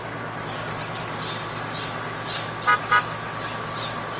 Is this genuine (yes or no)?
yes